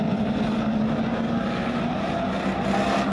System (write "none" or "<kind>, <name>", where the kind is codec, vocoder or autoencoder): none